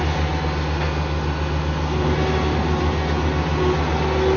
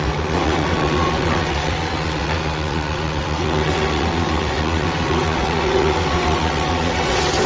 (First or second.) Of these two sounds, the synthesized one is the second